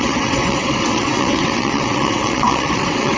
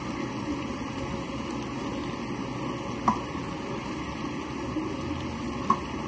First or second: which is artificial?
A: first